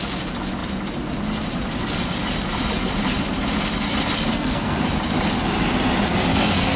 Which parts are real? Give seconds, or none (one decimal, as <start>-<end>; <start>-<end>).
0.0-4.3; 4.8-6.3